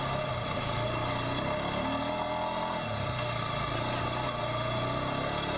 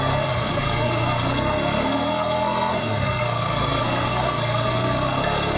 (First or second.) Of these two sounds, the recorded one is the first